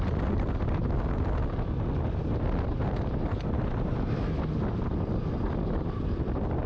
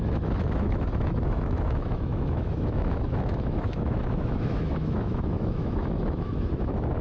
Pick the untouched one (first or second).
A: first